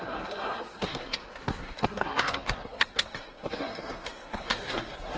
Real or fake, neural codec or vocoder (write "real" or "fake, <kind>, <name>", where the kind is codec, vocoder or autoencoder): fake, codec, SNAC